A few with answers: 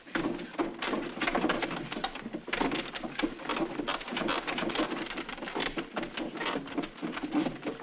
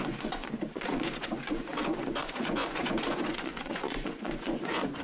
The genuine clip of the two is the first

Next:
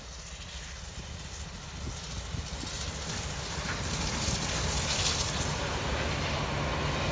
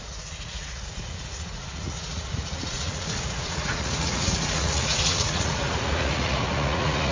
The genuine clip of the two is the first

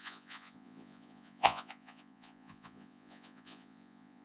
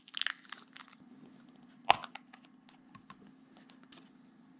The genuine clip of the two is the second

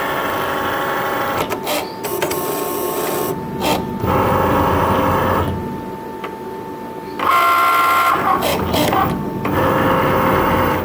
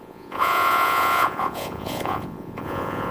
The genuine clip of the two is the first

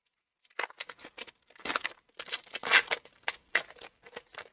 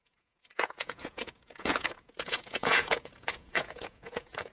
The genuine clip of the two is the first